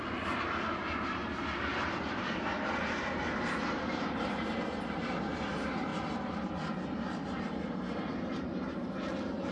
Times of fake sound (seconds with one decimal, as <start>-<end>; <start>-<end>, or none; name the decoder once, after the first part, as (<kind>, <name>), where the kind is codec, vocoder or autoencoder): 0.0-5.9 (vocoder, BigVGAN v2); 7.2-9.5

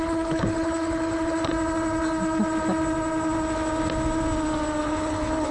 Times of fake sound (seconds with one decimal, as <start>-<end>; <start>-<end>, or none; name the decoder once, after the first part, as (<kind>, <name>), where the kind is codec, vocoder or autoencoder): 0.0-1.5 (codec, HILCodec); 4.8-5.5

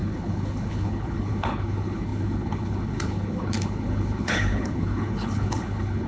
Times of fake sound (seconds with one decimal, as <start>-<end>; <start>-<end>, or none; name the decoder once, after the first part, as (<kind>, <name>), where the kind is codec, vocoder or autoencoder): 0.0-6.1 (codec, HILCodec)

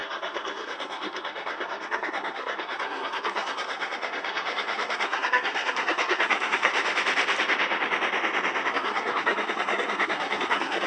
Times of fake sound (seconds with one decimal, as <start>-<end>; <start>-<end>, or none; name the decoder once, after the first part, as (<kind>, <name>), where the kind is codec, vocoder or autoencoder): 0.0-6.7 (codec, SNAC); 8.7-10.9

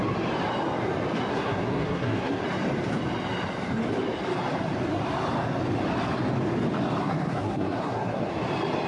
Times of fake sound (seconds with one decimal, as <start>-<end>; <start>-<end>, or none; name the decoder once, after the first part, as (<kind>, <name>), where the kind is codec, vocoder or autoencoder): 1.3-2.4 (codec, SNAC); 7.0-8.3

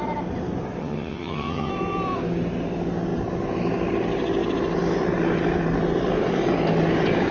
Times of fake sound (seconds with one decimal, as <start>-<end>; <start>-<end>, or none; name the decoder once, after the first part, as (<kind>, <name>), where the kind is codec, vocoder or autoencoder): 0.8-1.7 (vocoder, HiFi-GAN)